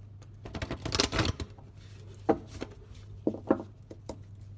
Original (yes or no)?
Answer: yes